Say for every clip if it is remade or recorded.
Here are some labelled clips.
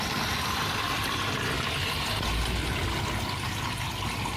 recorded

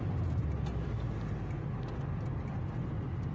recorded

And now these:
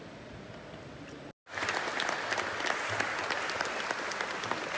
recorded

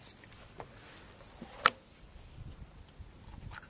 recorded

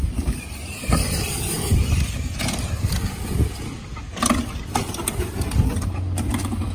remade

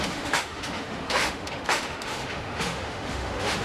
remade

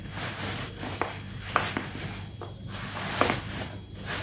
recorded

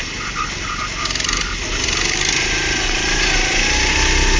recorded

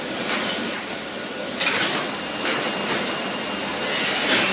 recorded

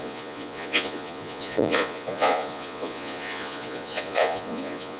remade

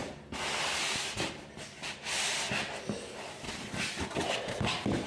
recorded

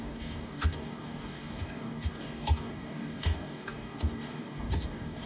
remade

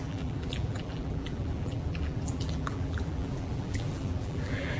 remade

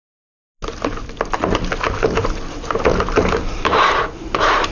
recorded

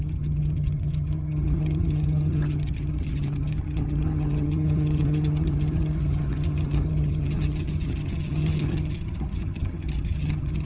remade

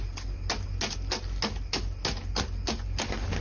recorded